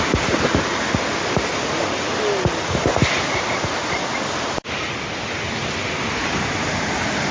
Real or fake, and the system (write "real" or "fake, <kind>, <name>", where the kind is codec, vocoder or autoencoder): real